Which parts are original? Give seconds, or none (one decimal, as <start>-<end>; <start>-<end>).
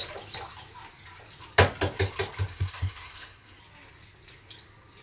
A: 0.0-2.5; 3.6-5.0